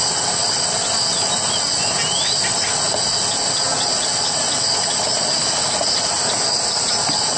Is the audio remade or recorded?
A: recorded